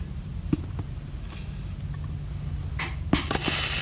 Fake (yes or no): no